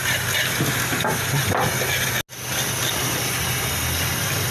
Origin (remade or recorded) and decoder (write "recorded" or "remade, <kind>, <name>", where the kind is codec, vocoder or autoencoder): recorded